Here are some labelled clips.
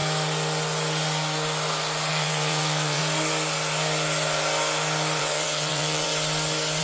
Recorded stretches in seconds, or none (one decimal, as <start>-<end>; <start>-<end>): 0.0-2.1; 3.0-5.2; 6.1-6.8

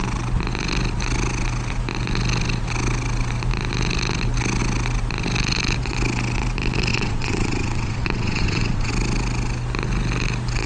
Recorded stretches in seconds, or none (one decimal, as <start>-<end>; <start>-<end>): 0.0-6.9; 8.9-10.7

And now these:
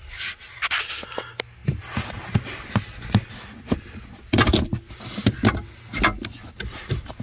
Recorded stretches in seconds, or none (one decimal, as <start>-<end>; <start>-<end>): 0.0-7.2

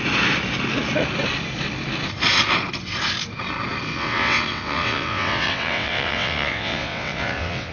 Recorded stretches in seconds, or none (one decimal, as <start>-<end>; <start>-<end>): 0.0-3.9